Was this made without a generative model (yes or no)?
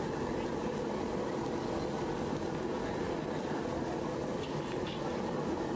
yes